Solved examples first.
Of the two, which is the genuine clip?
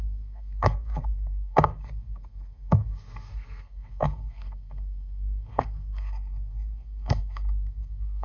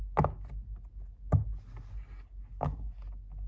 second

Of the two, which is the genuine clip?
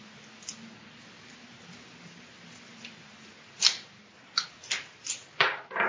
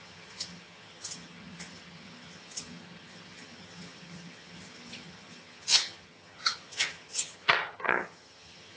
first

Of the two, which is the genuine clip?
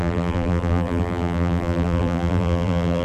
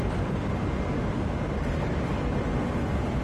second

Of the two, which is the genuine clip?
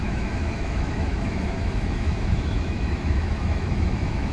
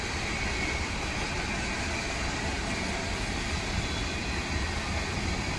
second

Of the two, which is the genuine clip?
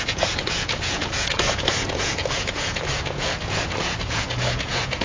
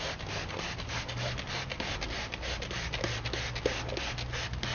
second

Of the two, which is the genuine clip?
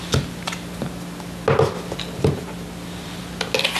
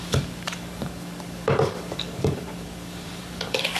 first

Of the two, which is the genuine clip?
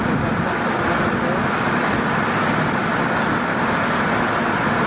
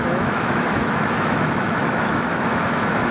first